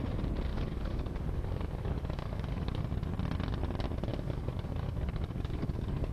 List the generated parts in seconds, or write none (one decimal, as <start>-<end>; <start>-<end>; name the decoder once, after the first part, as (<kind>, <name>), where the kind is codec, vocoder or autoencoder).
0.5-2.8 (codec, DAC); 4.1-6.1

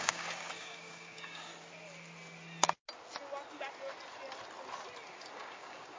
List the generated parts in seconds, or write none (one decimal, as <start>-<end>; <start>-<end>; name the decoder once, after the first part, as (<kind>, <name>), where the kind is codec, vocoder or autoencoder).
0.0-1.5 (codec, DAC); 5.1-6.0

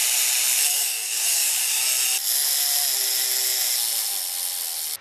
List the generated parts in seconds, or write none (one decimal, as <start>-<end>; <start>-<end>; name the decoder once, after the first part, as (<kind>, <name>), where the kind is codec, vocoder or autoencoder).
0.7-1.8 (codec, DAC)

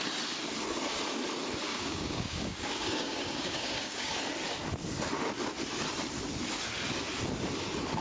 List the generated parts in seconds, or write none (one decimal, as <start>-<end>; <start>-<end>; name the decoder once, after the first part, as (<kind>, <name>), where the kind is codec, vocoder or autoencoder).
1.7-4.2 (codec, DAC)

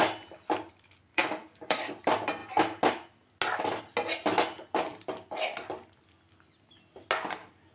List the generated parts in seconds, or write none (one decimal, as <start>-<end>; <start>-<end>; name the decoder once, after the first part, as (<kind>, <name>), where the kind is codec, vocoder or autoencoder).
1.1-1.9 (codec, DAC)

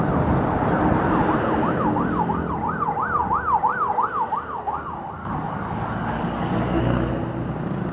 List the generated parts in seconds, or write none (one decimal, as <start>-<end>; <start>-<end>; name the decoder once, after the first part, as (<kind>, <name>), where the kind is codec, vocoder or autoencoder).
5.2-6.8 (codec, DAC)

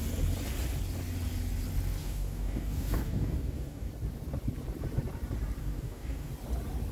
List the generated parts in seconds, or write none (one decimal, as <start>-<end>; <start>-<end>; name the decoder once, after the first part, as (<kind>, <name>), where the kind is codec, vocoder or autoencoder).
2.0-3.9 (codec, DAC); 5.6-6.3